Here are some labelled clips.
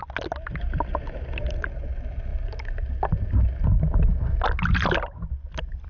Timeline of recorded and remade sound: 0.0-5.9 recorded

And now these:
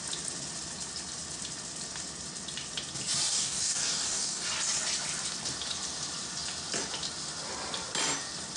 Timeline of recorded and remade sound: 0.0-3.3 recorded; 3.3-4.4 remade; 4.4-8.6 recorded

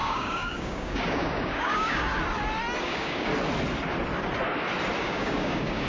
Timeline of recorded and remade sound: 0.0-2.1 remade; 2.1-2.8 recorded; 2.8-3.3 remade; 3.3-5.0 recorded; 5.0-5.9 remade

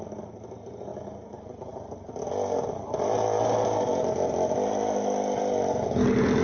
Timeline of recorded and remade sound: 0.0-6.4 recorded

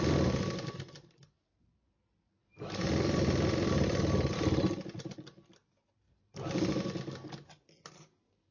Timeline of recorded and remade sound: 0.0-8.5 recorded

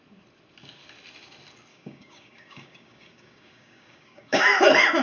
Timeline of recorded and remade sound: 0.0-1.7 recorded; 1.7-4.4 remade; 4.4-5.0 recorded

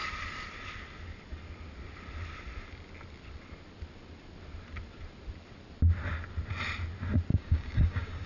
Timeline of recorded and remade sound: 0.0-7.3 recorded; 7.3-8.3 remade